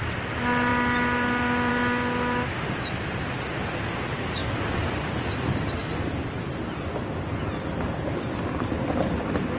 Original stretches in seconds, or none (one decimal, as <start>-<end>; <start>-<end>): 0.0-9.6